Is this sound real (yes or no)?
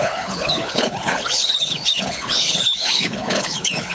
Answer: no